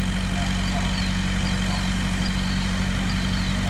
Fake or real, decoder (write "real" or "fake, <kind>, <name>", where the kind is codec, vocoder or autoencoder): real